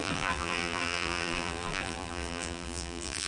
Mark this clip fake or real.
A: fake